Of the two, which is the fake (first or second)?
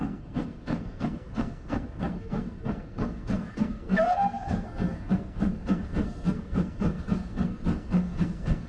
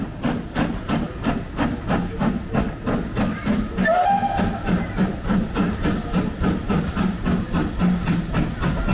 first